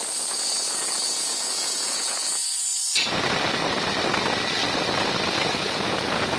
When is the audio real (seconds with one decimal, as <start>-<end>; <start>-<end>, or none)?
2.7-5.4